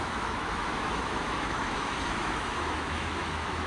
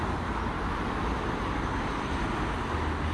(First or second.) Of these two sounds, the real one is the second